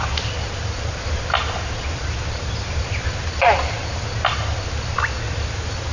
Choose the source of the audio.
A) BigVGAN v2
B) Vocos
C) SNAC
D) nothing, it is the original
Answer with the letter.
D